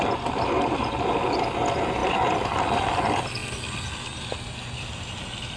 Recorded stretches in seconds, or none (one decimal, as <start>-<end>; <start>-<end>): 0.0-5.6